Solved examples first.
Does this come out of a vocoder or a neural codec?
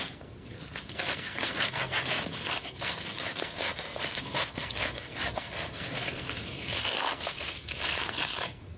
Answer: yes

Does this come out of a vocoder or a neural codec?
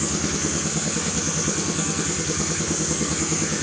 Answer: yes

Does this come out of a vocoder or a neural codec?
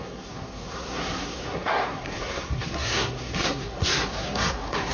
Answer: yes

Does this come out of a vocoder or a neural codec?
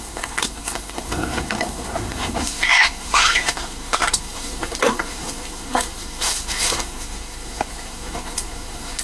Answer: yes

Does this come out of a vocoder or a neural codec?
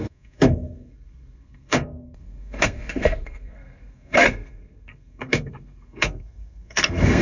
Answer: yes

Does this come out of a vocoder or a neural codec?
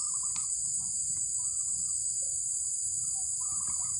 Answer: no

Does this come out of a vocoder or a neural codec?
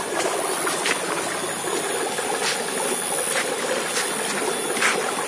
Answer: no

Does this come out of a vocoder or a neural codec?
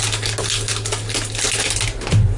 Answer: no